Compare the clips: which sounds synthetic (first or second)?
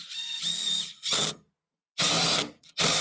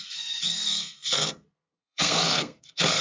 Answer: second